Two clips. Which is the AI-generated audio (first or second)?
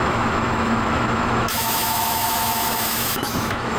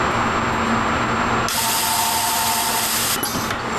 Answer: first